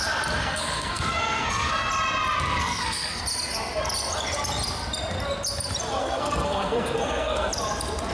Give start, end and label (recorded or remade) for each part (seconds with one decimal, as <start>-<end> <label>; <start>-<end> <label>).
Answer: 0.0-0.4 recorded; 0.4-1.9 remade; 1.9-2.6 recorded; 2.6-3.2 remade; 3.2-6.0 recorded; 6.0-7.5 remade; 7.5-8.1 recorded

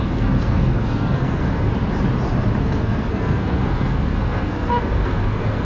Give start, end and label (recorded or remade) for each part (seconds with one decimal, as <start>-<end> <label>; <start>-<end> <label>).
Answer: 0.0-1.7 remade; 1.7-2.6 recorded; 2.6-5.6 remade